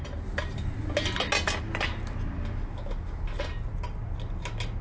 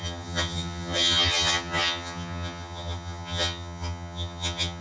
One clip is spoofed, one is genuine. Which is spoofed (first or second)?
second